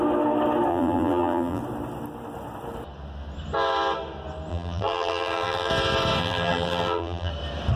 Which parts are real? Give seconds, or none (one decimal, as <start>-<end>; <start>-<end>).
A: 0.0-0.7; 1.6-4.5; 5.7-6.2; 7.3-7.8